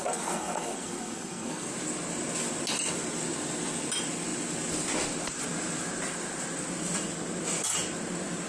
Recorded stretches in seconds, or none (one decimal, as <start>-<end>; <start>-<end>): 1.7-8.5